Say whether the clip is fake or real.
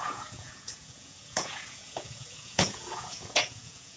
fake